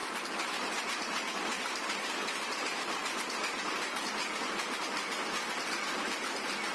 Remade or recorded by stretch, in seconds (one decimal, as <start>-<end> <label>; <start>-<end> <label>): 0.0-6.7 recorded

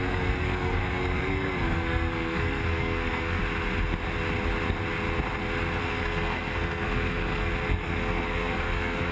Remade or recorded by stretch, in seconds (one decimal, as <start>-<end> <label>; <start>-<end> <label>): 0.0-3.4 remade; 3.4-5.8 recorded; 5.8-9.1 remade

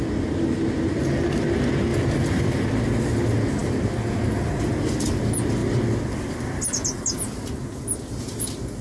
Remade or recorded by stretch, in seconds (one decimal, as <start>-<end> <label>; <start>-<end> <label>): 0.0-1.9 recorded; 1.9-3.0 remade; 3.0-8.8 recorded

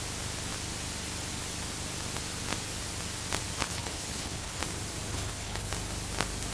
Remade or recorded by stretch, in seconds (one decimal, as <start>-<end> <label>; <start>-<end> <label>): 0.0-3.6 recorded; 3.6-4.6 remade; 4.6-5.1 recorded; 5.1-5.7 remade; 5.7-6.5 recorded

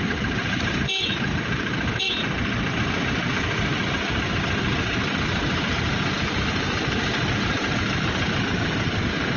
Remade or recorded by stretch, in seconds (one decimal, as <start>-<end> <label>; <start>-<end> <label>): 0.0-9.4 remade

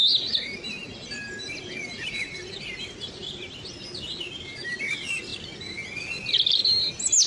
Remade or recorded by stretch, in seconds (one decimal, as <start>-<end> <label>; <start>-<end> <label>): 0.0-7.3 recorded

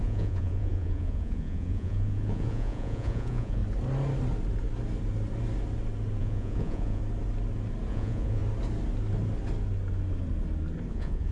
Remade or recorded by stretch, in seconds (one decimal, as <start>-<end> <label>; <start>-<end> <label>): 0.0-3.6 remade; 3.6-6.2 recorded; 6.2-7.0 remade; 7.0-7.9 recorded; 7.9-8.4 remade; 8.4-10.9 recorded; 10.9-11.3 remade